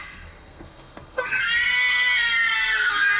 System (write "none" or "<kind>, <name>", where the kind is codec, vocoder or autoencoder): codec, SNAC